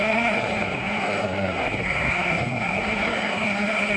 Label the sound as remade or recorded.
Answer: remade